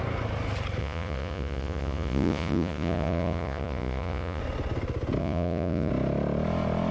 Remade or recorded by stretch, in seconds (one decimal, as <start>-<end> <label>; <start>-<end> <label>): 0.0-0.8 recorded; 0.8-4.4 remade; 4.4-5.2 recorded; 5.2-5.9 remade; 5.9-6.9 recorded